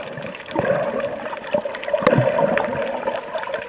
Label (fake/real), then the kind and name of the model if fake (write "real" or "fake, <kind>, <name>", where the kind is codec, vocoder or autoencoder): real